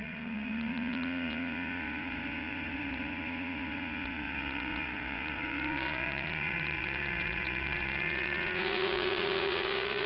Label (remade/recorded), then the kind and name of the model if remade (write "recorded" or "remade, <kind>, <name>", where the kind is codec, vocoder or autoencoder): remade, vocoder, Vocos